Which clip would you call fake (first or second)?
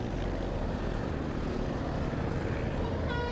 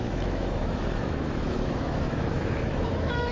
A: second